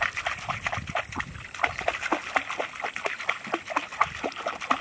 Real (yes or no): yes